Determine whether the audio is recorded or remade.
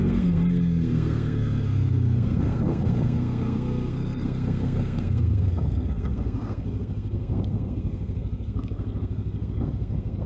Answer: remade